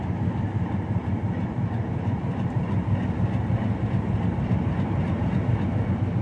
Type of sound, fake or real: real